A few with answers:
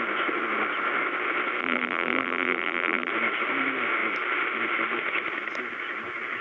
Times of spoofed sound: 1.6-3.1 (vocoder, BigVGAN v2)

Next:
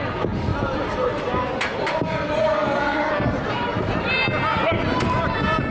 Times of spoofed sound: 2.4-3.1 (codec, SNAC)

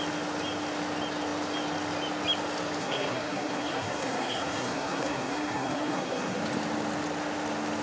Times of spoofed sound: 2.8-6.4 (codec, SNAC)

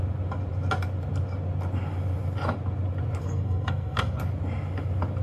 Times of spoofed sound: 3.2-4.2 (codec, SNAC)

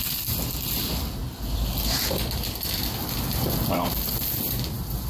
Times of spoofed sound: none

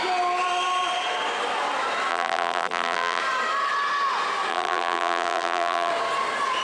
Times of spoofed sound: 2.1-3.2 (vocoder, BigVGAN v2); 4.5-5.9